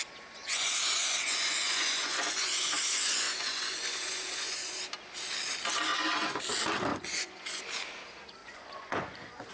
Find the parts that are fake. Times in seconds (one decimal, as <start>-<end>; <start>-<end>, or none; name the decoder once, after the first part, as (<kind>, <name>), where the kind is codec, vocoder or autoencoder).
0.4-4.8 (vocoder, Vocos); 5.9-6.4; 6.9-7.6; 8.4-9.5